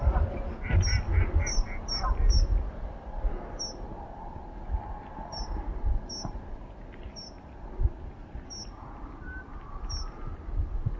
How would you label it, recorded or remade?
recorded